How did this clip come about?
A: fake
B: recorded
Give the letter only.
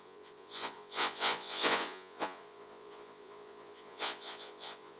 A